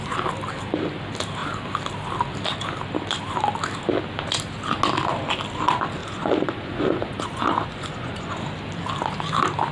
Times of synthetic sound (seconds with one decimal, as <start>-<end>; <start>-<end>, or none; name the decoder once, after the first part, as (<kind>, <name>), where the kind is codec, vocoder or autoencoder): 6.0-8.4 (vocoder, Vocos)